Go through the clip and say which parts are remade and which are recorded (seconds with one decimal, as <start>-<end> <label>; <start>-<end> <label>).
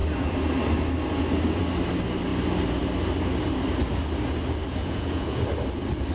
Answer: 0.0-4.8 recorded; 4.8-5.4 remade; 5.4-6.1 recorded